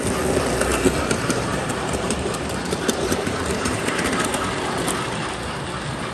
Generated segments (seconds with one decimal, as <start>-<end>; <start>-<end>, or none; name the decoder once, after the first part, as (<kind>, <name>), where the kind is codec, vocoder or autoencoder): 0.7-4.4 (vocoder, BigVGAN v2)